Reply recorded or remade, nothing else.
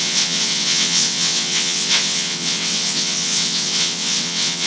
remade